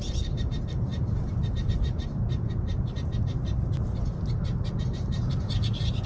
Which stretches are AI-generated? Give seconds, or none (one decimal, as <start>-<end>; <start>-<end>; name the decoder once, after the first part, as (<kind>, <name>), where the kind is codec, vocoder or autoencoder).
0.0-6.1 (vocoder, BigVGAN v2)